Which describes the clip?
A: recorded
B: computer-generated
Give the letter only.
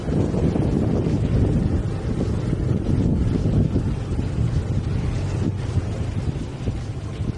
A